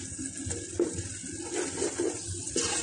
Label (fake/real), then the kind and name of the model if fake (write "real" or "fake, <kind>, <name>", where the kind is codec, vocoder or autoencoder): real